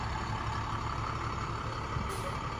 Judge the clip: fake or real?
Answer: real